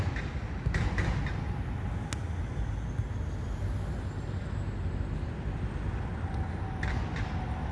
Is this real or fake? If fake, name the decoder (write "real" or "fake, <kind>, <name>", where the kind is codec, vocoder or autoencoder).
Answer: real